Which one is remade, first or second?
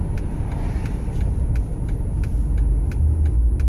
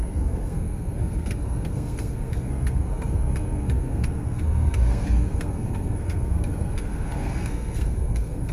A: second